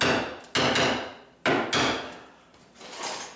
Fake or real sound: real